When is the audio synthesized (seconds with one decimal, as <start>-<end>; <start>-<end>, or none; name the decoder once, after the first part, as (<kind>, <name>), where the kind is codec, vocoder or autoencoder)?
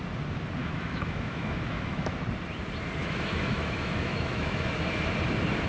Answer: 0.6-2.1 (autoencoder, DAC-VAE); 3.0-4.7